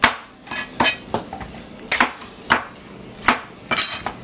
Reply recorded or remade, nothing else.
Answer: recorded